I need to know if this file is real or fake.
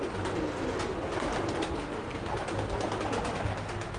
real